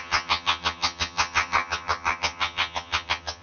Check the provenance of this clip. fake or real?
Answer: fake